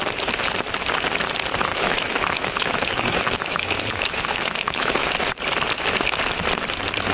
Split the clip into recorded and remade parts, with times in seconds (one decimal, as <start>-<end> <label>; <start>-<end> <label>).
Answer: 0.0-1.7 recorded; 1.7-5.1 remade; 5.1-7.1 recorded